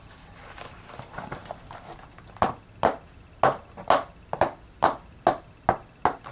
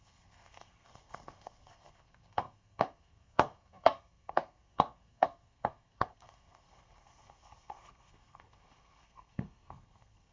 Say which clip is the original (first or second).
first